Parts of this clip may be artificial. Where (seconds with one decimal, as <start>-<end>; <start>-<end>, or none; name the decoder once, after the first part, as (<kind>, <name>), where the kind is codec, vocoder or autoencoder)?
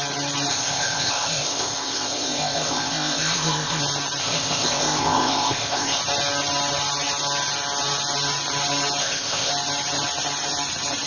0.5-3.8 (codec, ZipCodec); 4.2-6.0; 9.0-9.5